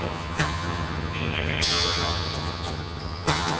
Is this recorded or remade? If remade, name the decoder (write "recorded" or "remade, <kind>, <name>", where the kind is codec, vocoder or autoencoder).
remade, vocoder, HiFi-GAN